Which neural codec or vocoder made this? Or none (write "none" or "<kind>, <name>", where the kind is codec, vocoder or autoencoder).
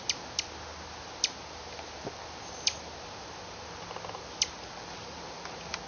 none